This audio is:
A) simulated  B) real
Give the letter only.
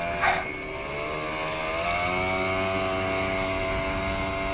B